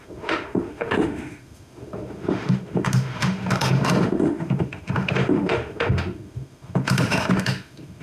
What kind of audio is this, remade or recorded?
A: remade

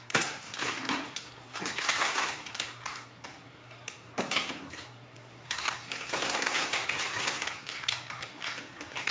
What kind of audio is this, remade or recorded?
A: remade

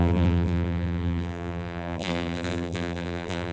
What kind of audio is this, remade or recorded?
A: remade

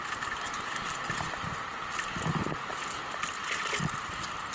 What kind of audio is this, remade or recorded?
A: recorded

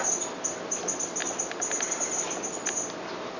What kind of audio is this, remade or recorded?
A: recorded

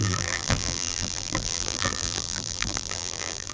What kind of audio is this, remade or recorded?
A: remade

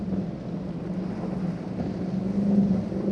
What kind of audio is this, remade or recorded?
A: recorded